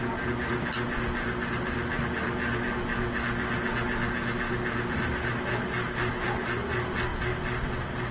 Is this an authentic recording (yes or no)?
yes